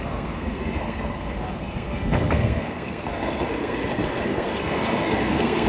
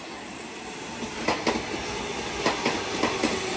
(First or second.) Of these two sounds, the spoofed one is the first